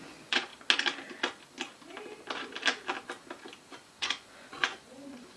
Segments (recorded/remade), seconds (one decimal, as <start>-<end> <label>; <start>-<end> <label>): 0.0-0.5 remade; 0.5-3.7 recorded; 3.7-5.4 remade